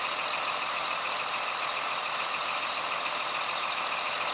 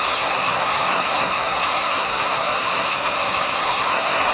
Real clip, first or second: first